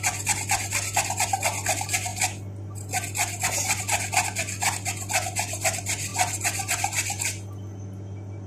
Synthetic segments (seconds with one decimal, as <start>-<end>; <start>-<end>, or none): none